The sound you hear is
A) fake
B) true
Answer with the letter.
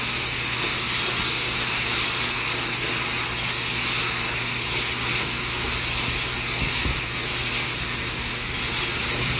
B